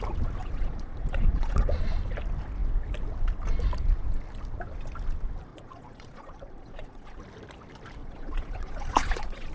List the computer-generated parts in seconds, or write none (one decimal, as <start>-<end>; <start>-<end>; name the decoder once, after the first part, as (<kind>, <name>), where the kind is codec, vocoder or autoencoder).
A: 0.4-1.8 (vocoder, Vocos); 5.5-7.2; 8.0-9.5

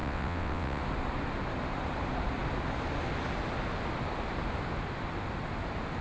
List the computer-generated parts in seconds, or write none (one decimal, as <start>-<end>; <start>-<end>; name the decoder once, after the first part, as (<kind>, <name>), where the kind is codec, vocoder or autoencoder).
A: 0.0-0.8 (vocoder, WaveNeXt)

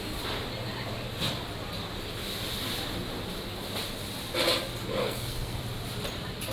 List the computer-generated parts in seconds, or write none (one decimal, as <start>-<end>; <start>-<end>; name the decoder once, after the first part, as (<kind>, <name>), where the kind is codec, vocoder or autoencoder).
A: 5.0-5.6 (codec, SNAC)

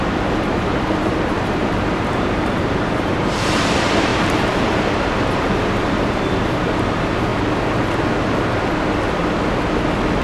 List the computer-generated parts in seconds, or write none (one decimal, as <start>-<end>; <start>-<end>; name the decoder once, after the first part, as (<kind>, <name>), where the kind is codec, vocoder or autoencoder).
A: 0.0-7.3 (vocoder, BigVGAN v2)

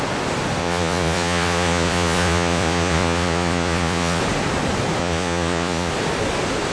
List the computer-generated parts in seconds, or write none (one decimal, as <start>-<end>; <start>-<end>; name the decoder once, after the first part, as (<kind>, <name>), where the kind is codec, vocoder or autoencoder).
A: 0.6-4.2 (vocoder, Vocos); 5.0-5.9

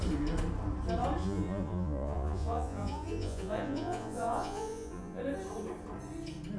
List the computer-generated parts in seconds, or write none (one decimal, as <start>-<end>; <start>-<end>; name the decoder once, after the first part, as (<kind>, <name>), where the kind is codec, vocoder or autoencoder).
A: 1.2-5.2 (vocoder, Vocos)